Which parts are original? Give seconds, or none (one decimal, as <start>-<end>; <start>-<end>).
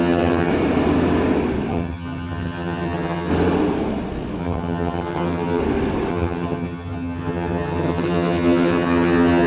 0.5-1.7; 3.3-4.4; 5.6-6.1